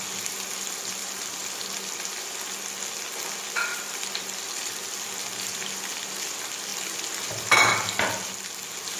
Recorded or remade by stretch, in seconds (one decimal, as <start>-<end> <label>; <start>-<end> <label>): 0.0-1.0 recorded; 1.0-2.4 remade; 2.4-3.7 recorded; 3.7-4.5 remade; 4.5-6.7 recorded; 6.7-9.0 remade